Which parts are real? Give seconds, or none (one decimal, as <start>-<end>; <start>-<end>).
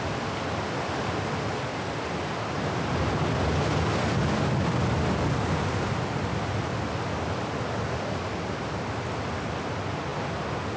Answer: 0.0-10.8